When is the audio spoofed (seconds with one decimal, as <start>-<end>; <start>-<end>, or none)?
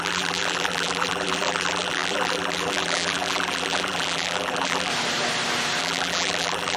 0.0-4.9; 5.8-6.8